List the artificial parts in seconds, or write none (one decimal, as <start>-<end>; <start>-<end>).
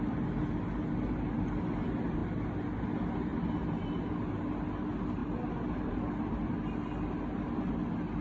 none